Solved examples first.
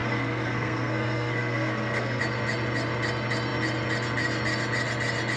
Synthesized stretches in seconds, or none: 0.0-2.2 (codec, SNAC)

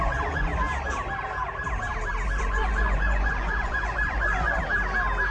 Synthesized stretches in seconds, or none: 0.0-0.5 (vocoder, Vocos); 2.4-4.6